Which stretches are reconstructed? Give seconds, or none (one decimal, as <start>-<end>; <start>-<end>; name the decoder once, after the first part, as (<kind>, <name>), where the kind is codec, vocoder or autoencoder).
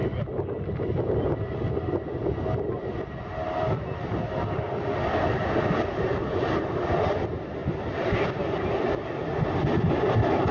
none